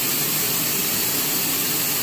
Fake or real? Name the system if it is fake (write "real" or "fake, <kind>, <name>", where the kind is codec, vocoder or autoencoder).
real